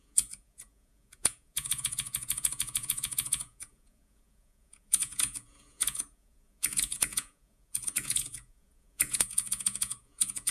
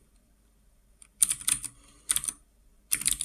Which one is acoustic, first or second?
second